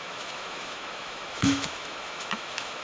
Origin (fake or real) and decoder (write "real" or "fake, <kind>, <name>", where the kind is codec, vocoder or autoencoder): fake, autoencoder, DAC-VAE